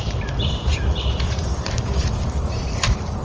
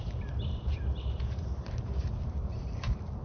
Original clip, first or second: second